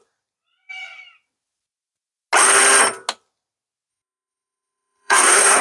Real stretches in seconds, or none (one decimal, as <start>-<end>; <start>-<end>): 0.0-3.9

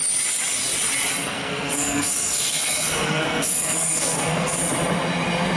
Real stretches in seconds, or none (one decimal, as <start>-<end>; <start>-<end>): 0.0-1.2; 4.6-5.6